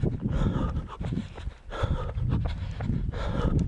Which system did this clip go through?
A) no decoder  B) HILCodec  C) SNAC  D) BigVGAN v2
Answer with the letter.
A